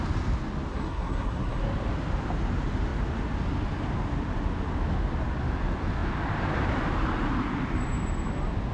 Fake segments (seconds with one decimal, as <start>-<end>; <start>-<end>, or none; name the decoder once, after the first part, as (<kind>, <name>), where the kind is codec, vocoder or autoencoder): 0.7-1.6 (codec, SNAC)